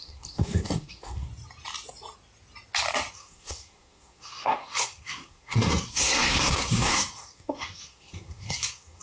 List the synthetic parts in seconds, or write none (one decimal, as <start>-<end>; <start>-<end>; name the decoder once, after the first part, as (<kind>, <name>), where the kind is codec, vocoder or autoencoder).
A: 0.0-1.3 (codec, SNAC); 3.1-9.0